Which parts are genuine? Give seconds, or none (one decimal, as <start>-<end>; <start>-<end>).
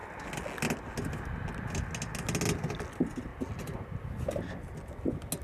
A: 0.0-5.4